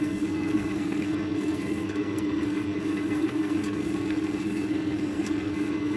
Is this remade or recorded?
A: remade